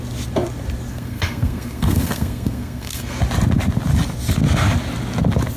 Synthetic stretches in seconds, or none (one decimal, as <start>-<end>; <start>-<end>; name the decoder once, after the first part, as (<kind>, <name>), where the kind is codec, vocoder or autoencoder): 0.9-3.2 (codec, SNAC)

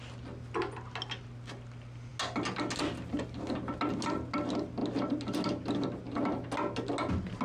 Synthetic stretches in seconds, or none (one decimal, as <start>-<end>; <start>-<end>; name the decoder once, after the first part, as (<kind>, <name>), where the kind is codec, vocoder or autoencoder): none